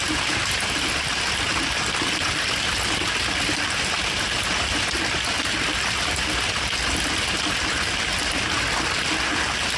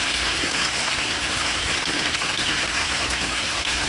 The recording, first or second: first